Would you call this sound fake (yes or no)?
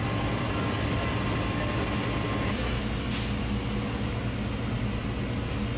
no